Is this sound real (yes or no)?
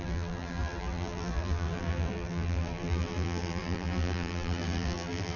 no